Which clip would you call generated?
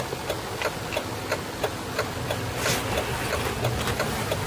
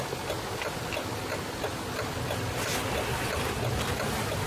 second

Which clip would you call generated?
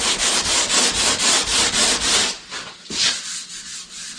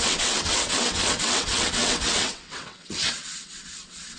second